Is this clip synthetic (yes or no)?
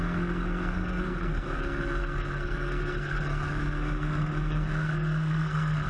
yes